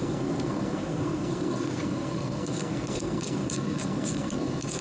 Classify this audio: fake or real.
fake